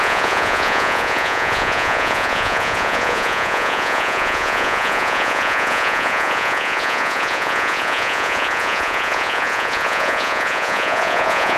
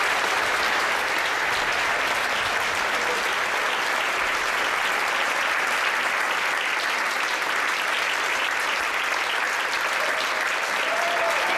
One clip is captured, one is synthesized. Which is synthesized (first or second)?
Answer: first